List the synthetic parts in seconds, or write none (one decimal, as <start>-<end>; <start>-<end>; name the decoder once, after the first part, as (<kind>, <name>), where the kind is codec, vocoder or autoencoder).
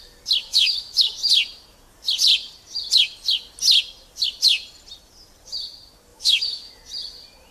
0.4-1.1 (autoencoder, DAC-VAE); 6.1-6.7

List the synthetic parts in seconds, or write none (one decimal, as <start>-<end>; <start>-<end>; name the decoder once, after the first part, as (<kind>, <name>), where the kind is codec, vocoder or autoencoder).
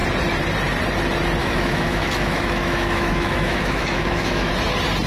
1.4-4.5 (autoencoder, DAC-VAE)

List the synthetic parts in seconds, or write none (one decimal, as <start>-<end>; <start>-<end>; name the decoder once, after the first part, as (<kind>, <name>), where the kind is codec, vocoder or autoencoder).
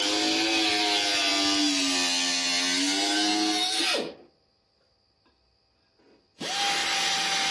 none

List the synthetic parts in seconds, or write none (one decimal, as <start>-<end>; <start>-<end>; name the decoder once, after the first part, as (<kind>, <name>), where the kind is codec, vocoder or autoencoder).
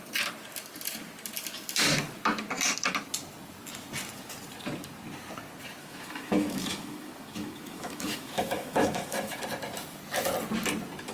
5.8-9.4 (autoencoder, DAC-VAE)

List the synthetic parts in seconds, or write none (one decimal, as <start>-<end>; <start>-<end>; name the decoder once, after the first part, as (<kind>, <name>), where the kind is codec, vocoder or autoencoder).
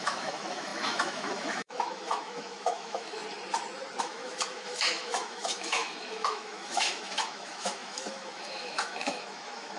0.0-3.2 (autoencoder, DAC-VAE); 4.0-9.8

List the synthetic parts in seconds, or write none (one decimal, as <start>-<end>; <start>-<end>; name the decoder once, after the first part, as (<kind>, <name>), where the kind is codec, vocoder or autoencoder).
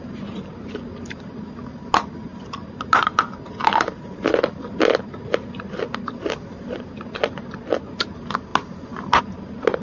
none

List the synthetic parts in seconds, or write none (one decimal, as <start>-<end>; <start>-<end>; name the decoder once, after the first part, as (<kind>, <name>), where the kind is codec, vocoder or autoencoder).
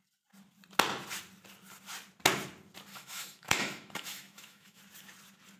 2.9-4.8 (autoencoder, DAC-VAE)